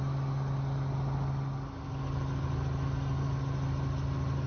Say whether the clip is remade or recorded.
recorded